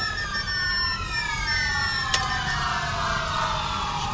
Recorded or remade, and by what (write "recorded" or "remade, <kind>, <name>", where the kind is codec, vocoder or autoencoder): recorded